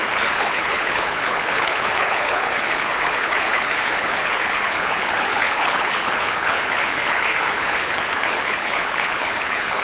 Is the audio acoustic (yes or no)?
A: no